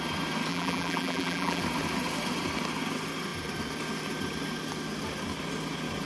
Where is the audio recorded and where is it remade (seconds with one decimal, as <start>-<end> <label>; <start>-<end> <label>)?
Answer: 0.0-0.5 recorded; 0.5-1.6 remade; 1.6-6.1 recorded